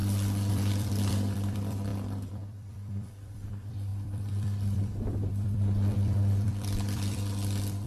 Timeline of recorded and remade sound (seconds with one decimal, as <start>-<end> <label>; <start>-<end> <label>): 0.0-0.5 recorded; 0.5-7.9 remade